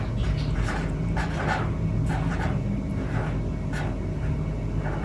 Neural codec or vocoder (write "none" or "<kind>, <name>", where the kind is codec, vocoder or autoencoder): none